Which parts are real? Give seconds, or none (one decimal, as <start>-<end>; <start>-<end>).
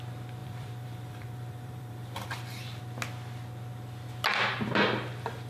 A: 0.0-0.4; 2.8-5.5